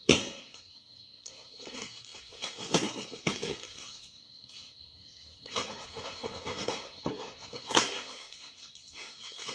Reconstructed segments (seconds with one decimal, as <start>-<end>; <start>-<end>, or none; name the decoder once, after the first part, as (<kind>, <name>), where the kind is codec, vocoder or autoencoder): 0.0-9.5 (codec, SNAC)